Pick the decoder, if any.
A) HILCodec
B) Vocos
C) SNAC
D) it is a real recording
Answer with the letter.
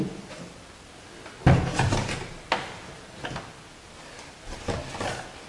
D